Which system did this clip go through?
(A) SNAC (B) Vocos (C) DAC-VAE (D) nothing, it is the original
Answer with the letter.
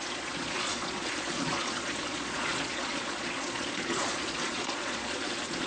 B